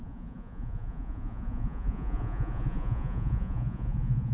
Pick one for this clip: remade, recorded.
remade